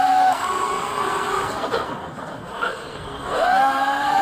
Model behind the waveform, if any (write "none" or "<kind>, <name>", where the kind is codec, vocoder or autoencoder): codec, SNAC